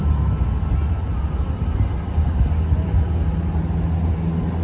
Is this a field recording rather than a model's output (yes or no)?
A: yes